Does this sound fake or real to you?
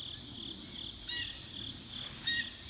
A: real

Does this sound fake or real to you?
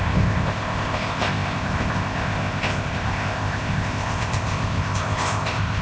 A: fake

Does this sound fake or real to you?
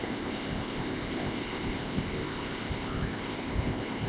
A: fake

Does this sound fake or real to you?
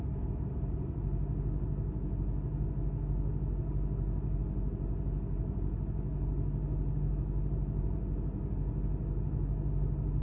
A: real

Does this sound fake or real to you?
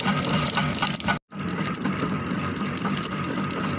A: real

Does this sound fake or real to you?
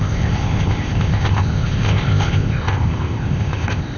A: fake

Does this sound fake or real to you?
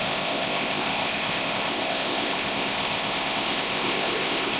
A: fake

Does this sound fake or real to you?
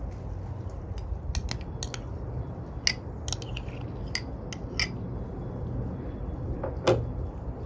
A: real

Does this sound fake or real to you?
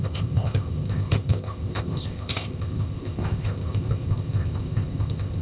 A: fake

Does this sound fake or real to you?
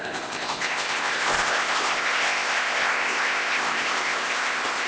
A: fake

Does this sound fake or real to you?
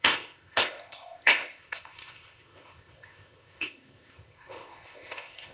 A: fake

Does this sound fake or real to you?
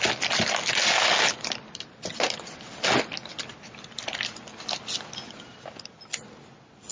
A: real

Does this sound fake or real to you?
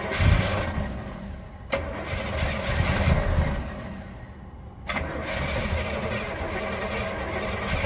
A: real